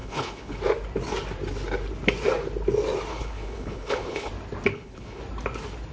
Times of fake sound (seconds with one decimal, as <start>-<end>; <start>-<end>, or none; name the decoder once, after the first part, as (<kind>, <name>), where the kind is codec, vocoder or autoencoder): 0.0-0.6 (codec, HILCodec); 3.1-4.3; 4.7-5.2